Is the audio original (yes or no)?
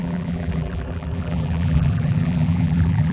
no